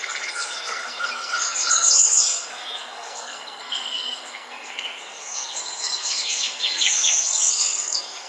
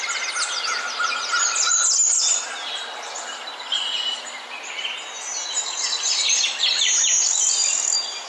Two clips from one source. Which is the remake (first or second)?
first